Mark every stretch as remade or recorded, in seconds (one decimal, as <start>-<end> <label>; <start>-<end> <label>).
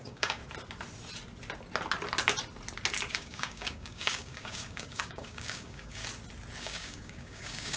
0.0-0.4 remade; 0.4-3.1 recorded; 3.1-6.0 remade; 6.0-6.6 recorded; 6.6-7.8 remade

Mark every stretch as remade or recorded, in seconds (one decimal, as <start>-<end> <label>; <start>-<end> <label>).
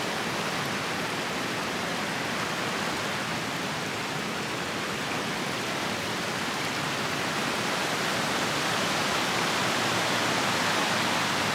0.0-11.5 recorded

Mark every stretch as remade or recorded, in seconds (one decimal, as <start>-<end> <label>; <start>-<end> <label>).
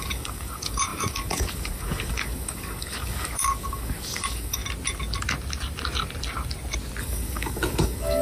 0.0-4.6 remade; 4.6-7.0 recorded; 7.0-8.2 remade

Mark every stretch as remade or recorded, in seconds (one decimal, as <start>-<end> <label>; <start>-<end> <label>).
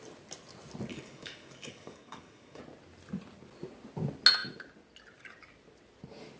0.0-0.9 recorded; 0.9-2.6 remade; 2.6-6.4 recorded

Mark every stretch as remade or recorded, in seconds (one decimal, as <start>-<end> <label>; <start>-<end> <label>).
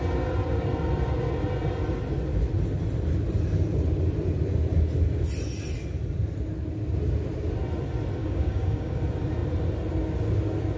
0.0-8.2 recorded; 8.2-9.0 remade; 9.0-10.8 recorded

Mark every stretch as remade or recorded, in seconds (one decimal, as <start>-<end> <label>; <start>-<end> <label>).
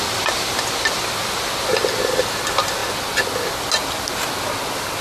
0.0-5.0 recorded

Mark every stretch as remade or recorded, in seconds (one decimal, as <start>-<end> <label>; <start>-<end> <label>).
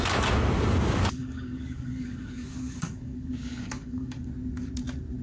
0.0-1.2 recorded; 1.2-4.3 remade; 4.3-5.2 recorded